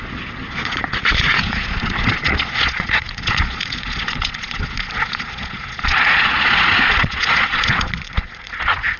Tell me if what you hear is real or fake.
fake